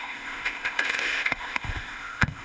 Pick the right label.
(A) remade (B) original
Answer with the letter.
A